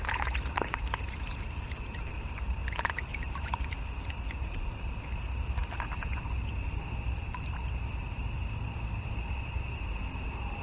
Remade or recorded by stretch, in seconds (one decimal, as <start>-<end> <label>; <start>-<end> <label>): 0.0-10.6 remade